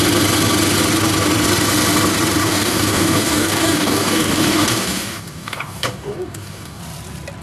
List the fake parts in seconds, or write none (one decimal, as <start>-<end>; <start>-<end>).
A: 2.4-6.8